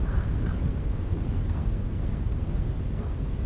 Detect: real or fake fake